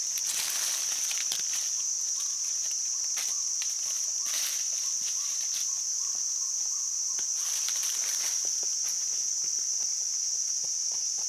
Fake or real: fake